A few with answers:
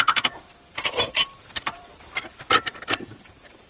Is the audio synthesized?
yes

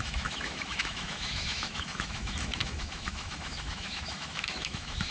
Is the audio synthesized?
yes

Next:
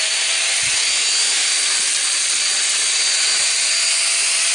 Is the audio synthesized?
no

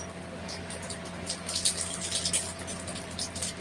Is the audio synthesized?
no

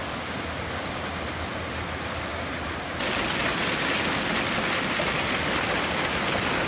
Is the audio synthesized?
no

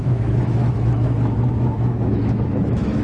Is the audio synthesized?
yes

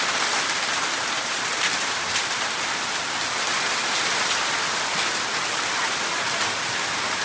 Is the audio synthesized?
no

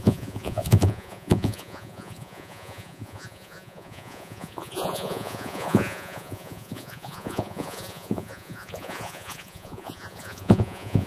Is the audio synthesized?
yes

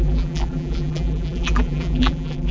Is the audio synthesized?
yes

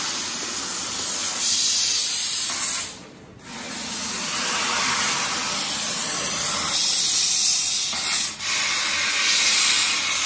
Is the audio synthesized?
no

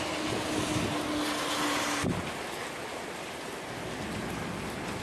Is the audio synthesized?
no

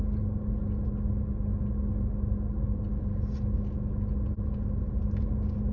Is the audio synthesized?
no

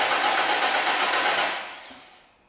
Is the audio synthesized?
no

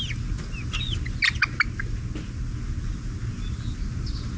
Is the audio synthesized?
no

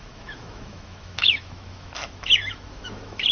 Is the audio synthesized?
yes